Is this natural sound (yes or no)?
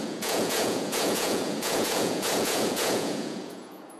no